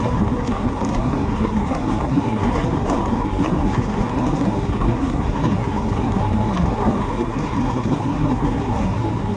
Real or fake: fake